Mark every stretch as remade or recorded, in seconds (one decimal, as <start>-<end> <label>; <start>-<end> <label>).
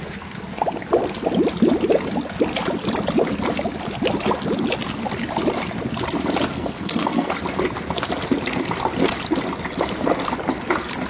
0.0-6.5 recorded; 6.5-7.3 remade; 7.3-11.1 recorded